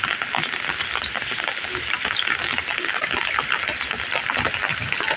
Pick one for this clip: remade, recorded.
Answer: recorded